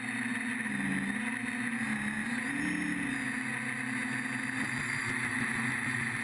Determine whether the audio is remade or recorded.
recorded